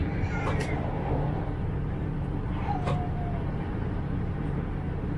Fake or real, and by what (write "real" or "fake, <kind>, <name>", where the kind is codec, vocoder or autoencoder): fake, vocoder, BigVGAN v2